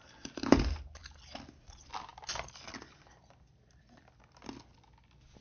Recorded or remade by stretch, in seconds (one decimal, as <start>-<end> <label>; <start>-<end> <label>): 0.0-5.4 recorded